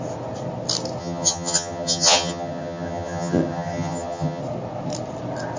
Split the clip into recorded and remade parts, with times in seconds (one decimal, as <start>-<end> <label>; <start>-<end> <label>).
0.0-1.0 recorded; 1.0-4.4 remade; 4.4-5.6 recorded